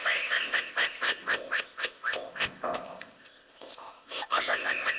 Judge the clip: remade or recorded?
remade